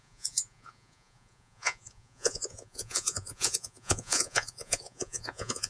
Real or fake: fake